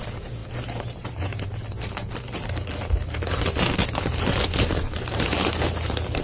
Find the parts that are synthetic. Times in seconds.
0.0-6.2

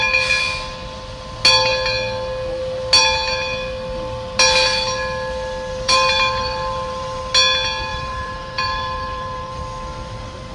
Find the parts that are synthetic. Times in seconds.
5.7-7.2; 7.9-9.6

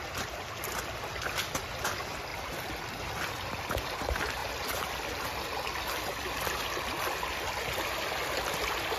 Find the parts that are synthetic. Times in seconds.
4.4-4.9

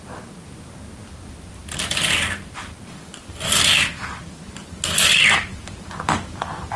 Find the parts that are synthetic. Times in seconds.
1.6-4.2

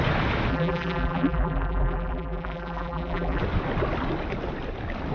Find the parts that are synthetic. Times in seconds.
0.5-3.4

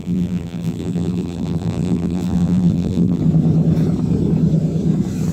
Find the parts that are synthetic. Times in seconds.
0.0-3.2

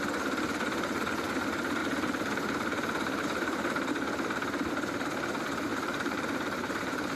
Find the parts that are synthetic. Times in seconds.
1.8-3.9; 5.7-7.2